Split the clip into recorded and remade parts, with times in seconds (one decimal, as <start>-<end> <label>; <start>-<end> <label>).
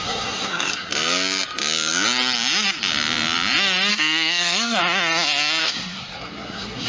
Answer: 0.0-0.9 remade; 0.9-3.9 recorded; 3.9-4.8 remade; 4.8-5.6 recorded; 5.6-6.9 remade